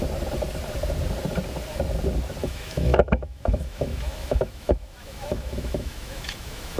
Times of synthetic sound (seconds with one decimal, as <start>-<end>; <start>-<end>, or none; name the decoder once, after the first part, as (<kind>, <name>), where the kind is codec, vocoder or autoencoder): 2.4-6.8 (autoencoder, DAC-VAE)